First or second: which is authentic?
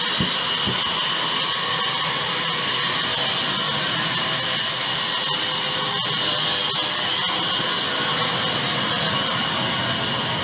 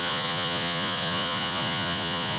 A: first